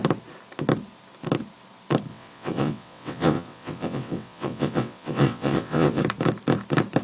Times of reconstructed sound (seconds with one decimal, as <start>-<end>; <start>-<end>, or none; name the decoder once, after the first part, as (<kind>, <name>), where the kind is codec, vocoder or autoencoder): 2.1-6.0 (vocoder, WaveNeXt)